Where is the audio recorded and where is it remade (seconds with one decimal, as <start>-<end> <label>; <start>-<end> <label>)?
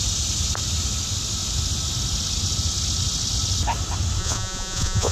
0.0-4.2 recorded; 4.2-5.1 remade